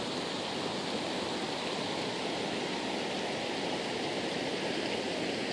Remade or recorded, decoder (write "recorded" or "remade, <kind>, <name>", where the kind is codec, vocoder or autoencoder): recorded